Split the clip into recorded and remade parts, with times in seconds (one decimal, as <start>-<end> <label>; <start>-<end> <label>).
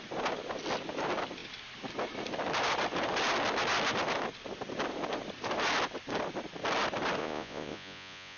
0.0-7.2 recorded; 7.2-8.4 remade